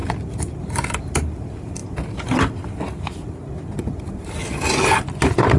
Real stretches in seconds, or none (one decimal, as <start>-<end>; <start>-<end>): 1.0-5.6